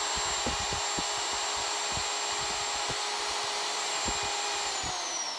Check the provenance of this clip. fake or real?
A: real